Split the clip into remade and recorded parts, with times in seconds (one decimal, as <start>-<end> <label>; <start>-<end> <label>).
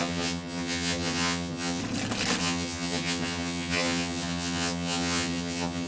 0.0-1.8 remade; 1.8-2.4 recorded; 2.4-5.9 remade